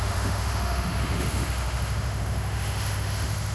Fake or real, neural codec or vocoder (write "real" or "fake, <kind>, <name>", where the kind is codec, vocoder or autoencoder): fake, autoencoder, DAC-VAE